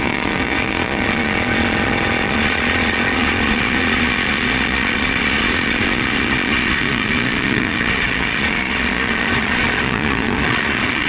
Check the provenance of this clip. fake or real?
fake